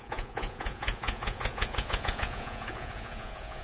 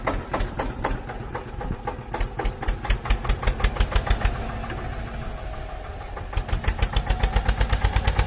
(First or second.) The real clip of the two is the second